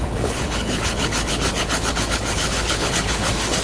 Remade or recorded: remade